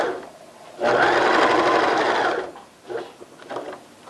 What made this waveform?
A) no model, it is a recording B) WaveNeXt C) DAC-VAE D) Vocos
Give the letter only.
A